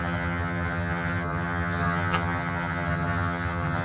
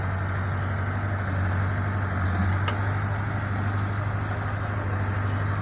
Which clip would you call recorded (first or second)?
second